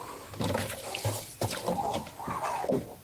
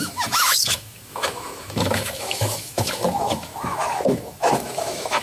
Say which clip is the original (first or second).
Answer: first